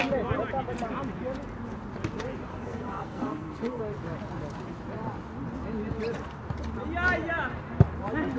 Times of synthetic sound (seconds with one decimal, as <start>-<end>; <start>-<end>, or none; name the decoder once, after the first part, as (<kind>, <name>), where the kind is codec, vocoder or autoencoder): 2.5-3.8 (codec, SNAC)